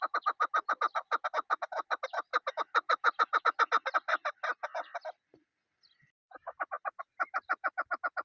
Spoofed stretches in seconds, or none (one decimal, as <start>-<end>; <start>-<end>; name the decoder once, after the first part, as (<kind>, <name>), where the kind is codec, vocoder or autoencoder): none